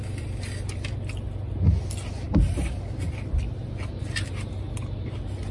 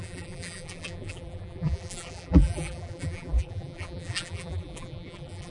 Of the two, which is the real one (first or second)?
first